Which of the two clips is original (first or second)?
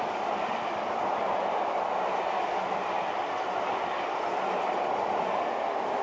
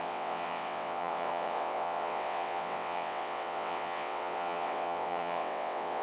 first